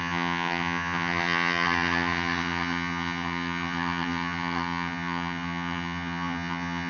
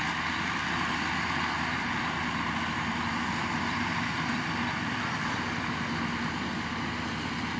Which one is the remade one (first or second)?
first